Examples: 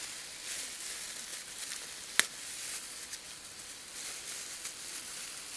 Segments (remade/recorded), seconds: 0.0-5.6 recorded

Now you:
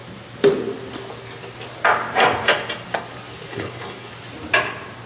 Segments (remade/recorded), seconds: 0.0-3.5 recorded; 3.5-4.1 remade; 4.1-5.1 recorded

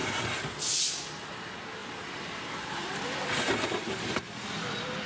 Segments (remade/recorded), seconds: 0.0-0.9 remade; 0.9-1.8 recorded; 1.8-5.1 remade

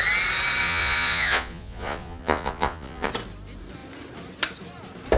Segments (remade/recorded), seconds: 0.0-0.6 recorded; 0.6-3.1 remade; 3.1-5.2 recorded